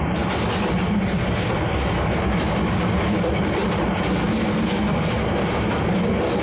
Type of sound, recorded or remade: recorded